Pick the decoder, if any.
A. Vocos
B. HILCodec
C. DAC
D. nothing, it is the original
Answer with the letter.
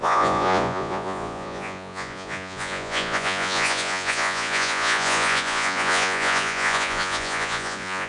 A